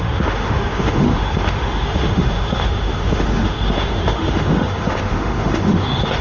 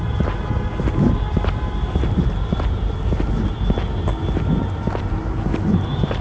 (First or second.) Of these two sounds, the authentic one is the second